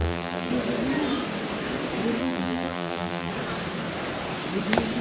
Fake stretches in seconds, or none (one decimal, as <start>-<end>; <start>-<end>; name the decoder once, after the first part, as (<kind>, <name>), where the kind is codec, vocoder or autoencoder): 0.0-0.5 (vocoder, BigVGAN v2); 2.2-3.3